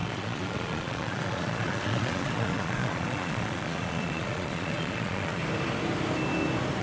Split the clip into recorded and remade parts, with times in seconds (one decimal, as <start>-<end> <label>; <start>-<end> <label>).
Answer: 0.0-5.4 remade; 5.4-6.8 recorded